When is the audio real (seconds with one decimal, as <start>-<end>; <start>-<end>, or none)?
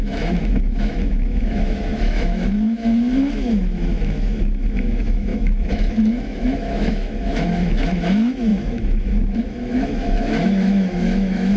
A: none